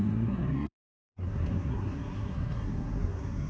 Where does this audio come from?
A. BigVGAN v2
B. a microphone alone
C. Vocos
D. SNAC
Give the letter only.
D